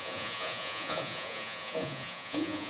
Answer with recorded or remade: remade